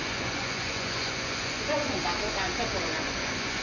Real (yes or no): no